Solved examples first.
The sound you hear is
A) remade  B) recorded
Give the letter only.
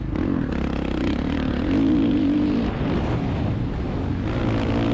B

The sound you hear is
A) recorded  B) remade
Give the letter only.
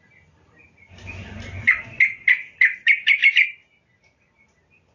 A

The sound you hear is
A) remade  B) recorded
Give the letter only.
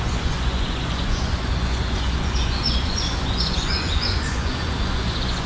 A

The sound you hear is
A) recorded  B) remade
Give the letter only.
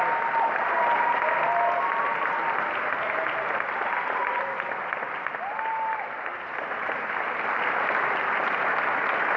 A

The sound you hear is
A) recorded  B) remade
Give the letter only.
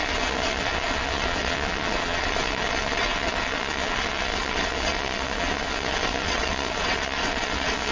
B